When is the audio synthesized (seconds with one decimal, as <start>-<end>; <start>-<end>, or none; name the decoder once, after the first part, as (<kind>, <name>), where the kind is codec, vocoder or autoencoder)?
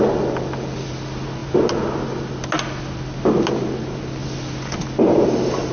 none